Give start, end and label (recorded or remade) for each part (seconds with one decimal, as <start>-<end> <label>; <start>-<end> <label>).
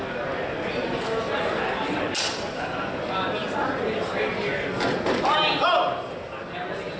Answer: 0.0-7.0 recorded